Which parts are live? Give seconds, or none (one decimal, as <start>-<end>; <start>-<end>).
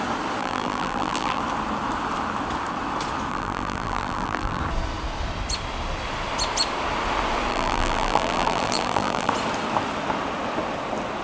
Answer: 0.0-0.4; 1.4-3.3; 4.6-7.5; 9.3-11.2